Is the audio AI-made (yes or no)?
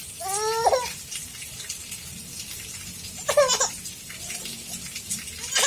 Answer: no